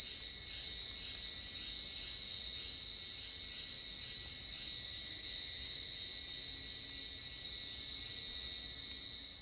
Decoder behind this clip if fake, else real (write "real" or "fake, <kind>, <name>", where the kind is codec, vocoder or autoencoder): real